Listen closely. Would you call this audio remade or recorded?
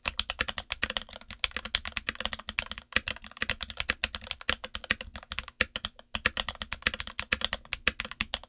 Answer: recorded